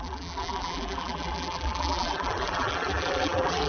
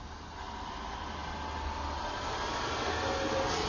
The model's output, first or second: first